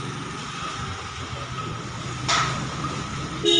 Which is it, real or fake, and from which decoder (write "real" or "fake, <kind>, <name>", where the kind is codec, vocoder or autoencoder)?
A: real